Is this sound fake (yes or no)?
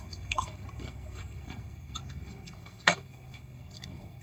yes